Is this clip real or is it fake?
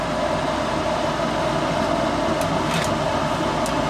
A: real